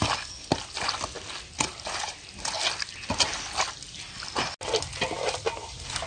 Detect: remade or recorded recorded